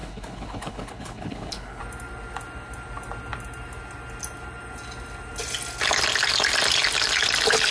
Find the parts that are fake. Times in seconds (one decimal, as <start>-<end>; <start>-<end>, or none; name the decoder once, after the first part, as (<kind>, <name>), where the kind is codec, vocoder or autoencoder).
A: 0.0-1.8 (codec, HILCodec)